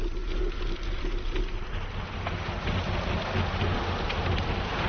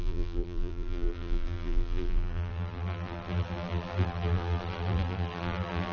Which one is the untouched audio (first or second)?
first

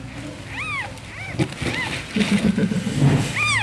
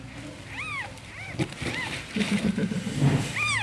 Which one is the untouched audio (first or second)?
first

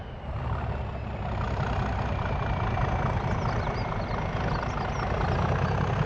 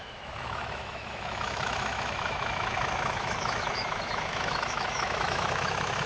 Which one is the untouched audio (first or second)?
first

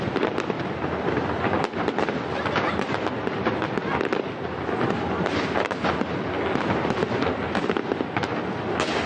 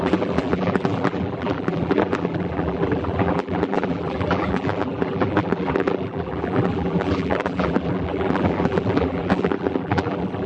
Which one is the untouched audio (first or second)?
first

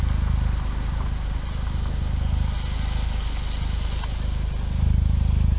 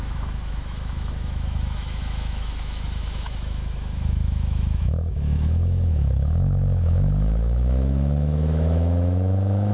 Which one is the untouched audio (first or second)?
first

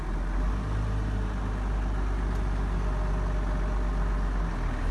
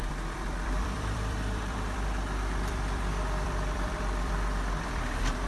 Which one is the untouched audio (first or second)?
first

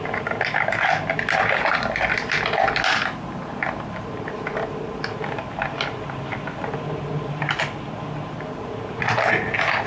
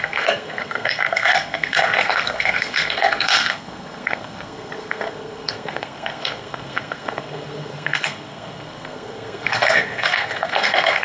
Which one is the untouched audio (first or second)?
first